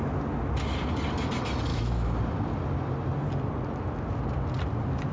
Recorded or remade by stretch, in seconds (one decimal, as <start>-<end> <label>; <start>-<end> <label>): 0.0-1.7 recorded; 1.7-2.2 remade; 2.2-5.1 recorded

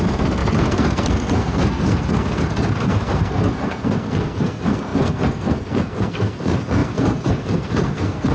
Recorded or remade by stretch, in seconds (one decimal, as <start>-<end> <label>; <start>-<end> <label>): 0.0-8.3 remade

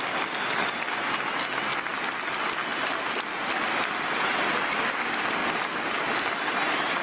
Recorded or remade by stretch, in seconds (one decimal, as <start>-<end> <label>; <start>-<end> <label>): 0.0-7.0 recorded

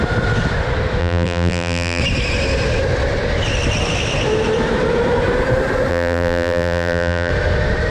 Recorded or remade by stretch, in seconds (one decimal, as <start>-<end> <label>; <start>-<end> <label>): 0.0-1.0 recorded; 1.0-2.0 remade; 2.0-5.9 recorded; 5.9-7.3 remade; 7.3-7.9 recorded

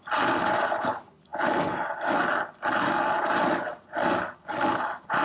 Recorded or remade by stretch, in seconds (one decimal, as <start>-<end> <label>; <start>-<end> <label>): 0.0-5.2 recorded

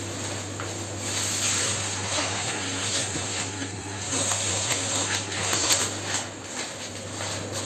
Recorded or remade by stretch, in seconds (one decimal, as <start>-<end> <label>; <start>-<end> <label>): 0.0-1.6 recorded; 1.6-5.8 remade; 5.8-7.7 recorded

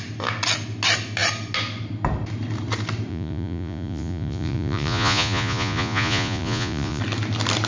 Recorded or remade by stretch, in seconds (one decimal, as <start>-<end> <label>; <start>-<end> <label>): 0.0-3.1 recorded; 3.1-7.0 remade; 7.0-7.7 recorded

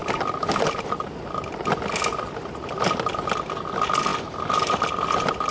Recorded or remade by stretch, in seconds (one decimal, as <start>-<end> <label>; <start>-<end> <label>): 0.0-5.5 recorded